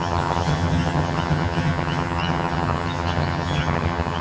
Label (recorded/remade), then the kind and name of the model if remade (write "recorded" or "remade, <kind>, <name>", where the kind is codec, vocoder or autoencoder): remade, vocoder, HiFi-GAN